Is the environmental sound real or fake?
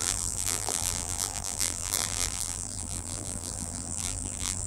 fake